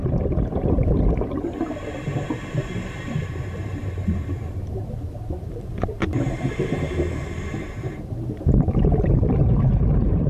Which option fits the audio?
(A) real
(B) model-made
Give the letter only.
B